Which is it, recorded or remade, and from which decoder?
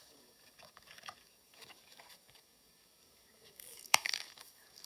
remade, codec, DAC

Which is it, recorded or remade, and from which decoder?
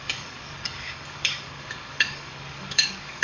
remade, codec, DAC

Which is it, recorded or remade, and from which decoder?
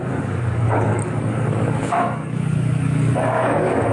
remade, codec, DAC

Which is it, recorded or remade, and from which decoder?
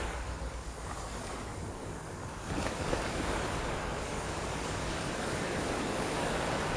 remade, codec, DAC